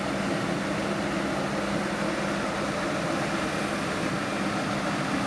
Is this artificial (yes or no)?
no